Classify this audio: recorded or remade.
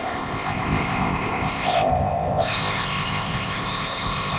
remade